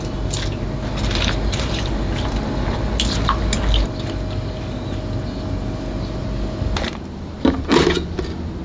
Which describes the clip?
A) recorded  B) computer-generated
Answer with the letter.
A